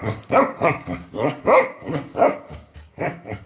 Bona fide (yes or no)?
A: no